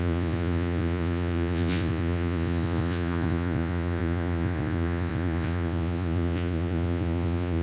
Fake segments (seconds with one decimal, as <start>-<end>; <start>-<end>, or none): 0.0-7.6